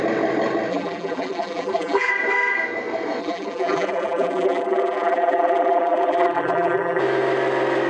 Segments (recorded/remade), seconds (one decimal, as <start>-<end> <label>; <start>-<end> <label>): 0.0-0.7 recorded; 0.7-2.1 remade; 2.1-3.2 recorded; 3.2-7.0 remade; 7.0-7.9 recorded